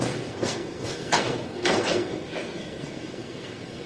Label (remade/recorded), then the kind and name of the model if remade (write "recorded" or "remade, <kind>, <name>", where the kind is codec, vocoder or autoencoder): remade, codec, SNAC